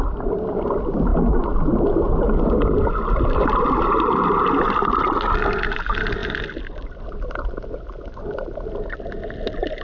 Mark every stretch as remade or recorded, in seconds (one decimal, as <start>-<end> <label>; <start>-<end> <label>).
0.0-9.8 recorded